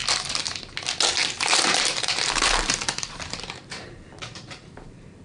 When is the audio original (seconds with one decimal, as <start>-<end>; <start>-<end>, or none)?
0.0-1.1